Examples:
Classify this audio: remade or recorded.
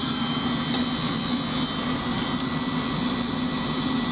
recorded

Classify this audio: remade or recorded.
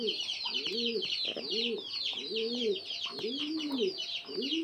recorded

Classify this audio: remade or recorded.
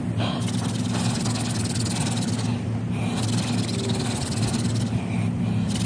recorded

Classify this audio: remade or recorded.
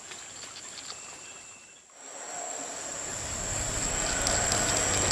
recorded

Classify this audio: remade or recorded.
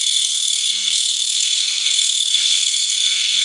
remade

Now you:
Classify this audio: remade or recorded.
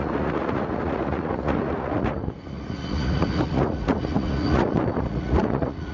remade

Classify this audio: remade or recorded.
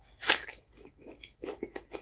remade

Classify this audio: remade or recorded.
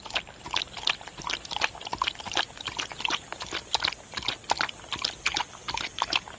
recorded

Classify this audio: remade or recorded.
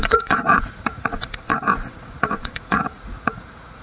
remade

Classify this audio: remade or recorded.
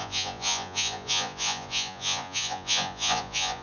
remade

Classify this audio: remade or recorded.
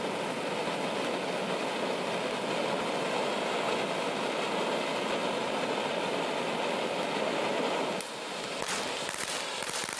recorded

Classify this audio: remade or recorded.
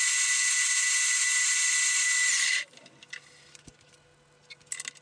recorded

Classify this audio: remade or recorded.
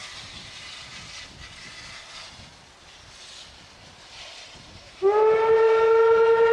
recorded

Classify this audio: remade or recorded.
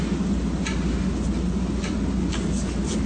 recorded